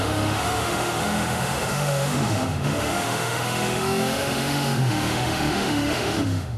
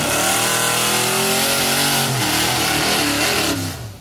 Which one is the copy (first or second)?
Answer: first